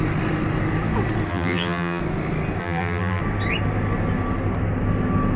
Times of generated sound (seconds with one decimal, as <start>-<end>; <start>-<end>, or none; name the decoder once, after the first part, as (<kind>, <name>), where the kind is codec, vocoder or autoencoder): 1.3-2.0 (vocoder, BigVGAN v2); 2.6-3.2